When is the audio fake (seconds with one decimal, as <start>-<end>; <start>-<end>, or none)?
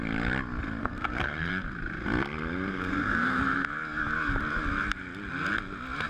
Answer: 0.8-1.5; 2.7-3.4